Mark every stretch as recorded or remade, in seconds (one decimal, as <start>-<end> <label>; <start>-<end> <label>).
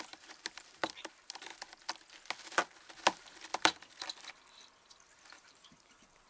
0.0-1.5 remade; 1.5-5.3 recorded; 5.3-6.3 remade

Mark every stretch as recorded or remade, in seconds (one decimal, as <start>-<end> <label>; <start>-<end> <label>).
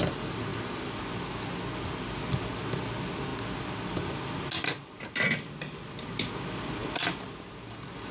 0.0-0.5 recorded; 0.5-1.0 remade; 1.0-6.8 recorded; 6.8-8.1 remade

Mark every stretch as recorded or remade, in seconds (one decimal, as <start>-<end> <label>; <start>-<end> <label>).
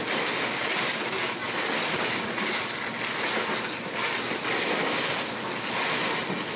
0.0-6.6 recorded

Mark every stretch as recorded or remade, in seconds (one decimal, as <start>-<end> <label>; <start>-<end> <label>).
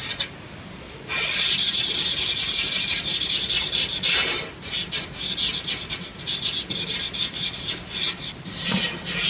0.0-4.4 remade; 4.4-6.1 recorded; 6.1-7.9 remade; 7.9-9.3 recorded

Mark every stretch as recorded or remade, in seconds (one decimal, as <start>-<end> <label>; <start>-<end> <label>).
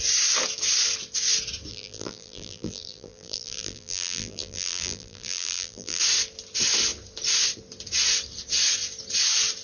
0.0-1.7 recorded; 1.7-6.0 remade; 6.0-9.6 recorded